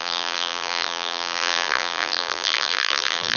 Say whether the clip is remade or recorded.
remade